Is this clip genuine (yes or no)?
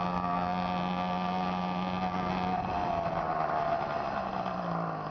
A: yes